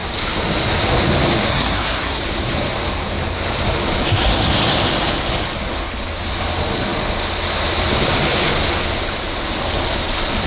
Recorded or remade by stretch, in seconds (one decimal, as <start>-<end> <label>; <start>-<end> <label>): 0.0-1.5 recorded; 1.5-2.2 remade; 2.2-10.5 recorded